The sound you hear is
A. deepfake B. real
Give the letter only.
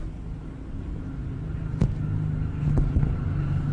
B